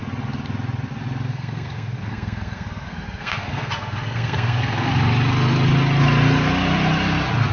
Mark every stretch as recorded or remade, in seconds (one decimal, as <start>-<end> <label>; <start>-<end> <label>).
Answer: 0.0-1.3 recorded; 1.3-4.9 remade; 4.9-7.5 recorded